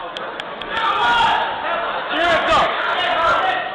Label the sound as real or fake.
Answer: real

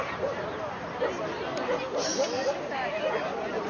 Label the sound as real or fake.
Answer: fake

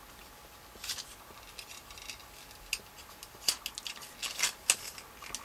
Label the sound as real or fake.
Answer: real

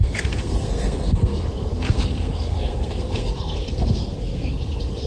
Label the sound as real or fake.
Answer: fake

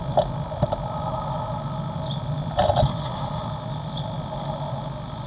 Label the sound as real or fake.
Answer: real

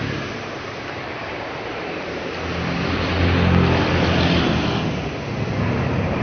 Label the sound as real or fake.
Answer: real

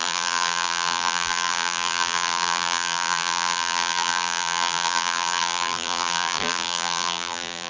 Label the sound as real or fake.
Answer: fake